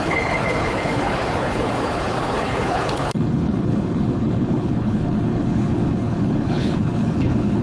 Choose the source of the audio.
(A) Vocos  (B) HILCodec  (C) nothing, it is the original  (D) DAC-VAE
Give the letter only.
B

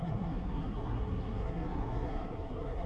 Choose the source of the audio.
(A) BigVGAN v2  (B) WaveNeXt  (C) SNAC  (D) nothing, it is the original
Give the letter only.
C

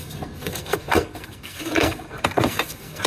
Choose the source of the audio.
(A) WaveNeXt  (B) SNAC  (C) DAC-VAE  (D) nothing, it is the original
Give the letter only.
B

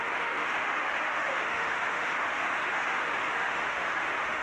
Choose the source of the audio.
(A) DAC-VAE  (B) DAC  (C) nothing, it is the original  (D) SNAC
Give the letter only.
A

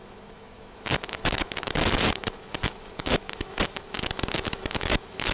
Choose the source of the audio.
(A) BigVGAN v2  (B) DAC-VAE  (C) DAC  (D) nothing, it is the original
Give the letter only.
B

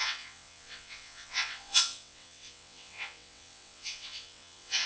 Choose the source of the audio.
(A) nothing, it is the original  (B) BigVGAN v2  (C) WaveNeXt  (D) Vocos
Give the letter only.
C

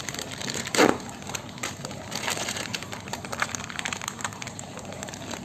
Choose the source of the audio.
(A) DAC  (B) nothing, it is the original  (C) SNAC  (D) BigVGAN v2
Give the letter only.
D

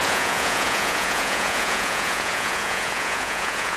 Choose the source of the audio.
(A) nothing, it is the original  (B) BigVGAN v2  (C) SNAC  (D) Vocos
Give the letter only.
D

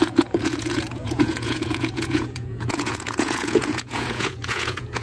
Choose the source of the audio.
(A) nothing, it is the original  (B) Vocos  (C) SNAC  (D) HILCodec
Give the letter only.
B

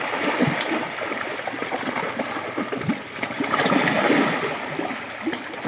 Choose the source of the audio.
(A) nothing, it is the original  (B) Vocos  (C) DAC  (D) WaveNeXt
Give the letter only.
A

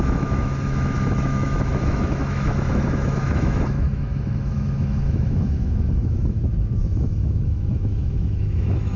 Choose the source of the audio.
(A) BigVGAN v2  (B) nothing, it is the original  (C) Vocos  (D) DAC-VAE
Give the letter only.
D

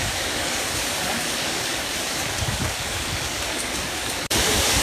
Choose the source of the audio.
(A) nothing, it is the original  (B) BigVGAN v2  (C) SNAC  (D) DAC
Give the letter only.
D